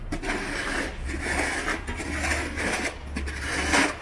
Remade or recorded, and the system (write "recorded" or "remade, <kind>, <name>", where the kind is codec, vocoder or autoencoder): recorded